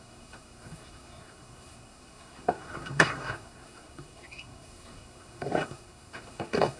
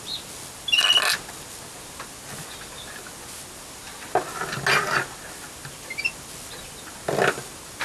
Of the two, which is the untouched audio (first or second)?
second